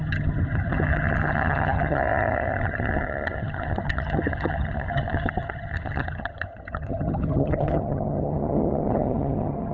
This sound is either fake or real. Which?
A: fake